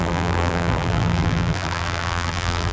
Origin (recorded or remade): remade